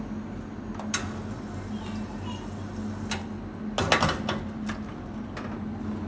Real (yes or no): yes